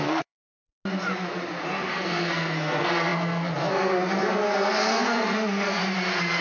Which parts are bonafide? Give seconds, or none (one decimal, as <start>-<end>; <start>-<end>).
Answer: 0.4-1.9; 5.8-6.4